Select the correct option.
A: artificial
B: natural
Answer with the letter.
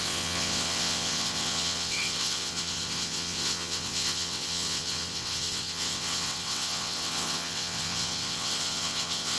A